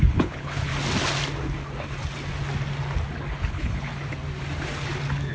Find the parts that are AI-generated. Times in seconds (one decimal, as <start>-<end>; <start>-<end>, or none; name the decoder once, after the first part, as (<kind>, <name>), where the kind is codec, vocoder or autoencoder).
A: 0.0-0.7 (codec, HILCodec); 3.3-3.9